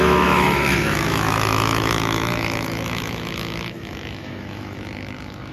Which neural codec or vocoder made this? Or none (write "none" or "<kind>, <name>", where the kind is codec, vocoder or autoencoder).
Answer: autoencoder, DAC-VAE